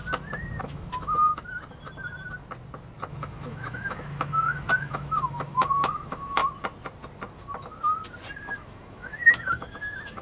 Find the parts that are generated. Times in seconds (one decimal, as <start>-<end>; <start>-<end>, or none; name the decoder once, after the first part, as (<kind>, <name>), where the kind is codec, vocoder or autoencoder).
0.6-1.3 (autoencoder, DAC-VAE); 3.1-6.4; 8.4-10.2